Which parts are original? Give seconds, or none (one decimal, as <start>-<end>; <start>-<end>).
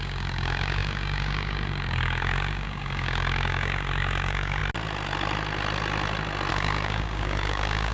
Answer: 4.6-6.5